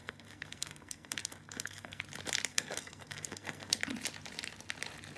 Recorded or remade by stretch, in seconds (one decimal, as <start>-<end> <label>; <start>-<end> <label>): 0.0-2.0 remade; 2.0-2.5 recorded; 2.5-3.8 remade; 3.8-5.2 recorded